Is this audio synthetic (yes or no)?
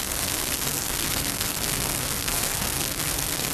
yes